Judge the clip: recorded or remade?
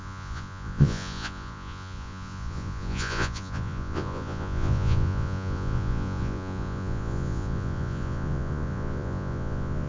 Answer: remade